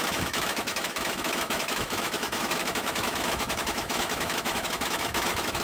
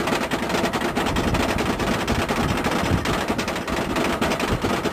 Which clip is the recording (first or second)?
second